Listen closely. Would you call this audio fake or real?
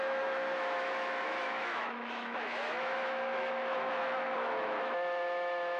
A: fake